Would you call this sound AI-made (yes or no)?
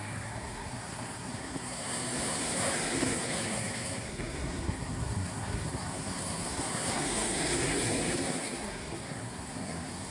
yes